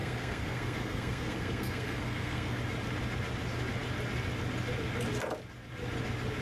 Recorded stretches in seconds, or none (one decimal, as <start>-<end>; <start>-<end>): 2.6-6.4